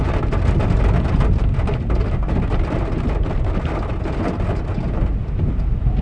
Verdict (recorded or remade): recorded